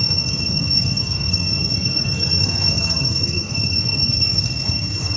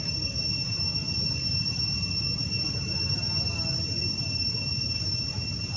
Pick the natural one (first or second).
second